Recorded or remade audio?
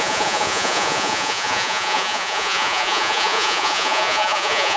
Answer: remade